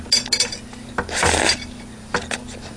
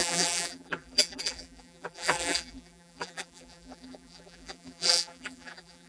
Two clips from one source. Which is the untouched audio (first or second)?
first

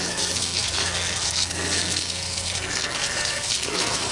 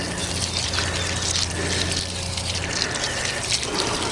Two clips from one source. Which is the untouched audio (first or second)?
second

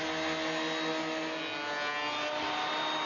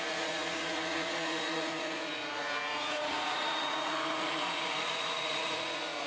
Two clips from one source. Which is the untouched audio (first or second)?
first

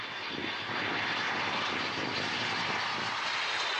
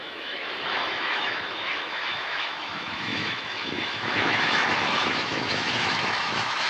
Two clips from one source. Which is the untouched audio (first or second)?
first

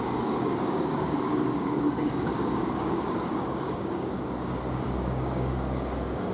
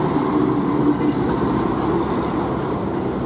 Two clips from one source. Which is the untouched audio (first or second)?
second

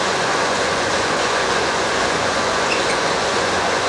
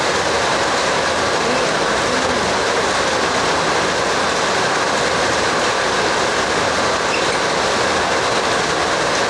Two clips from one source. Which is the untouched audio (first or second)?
second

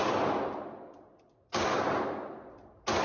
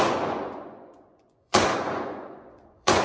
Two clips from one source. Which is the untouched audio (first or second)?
first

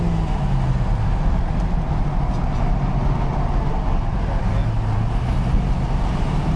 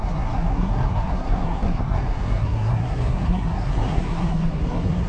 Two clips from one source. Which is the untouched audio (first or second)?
first